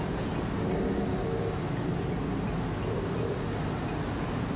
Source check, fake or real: real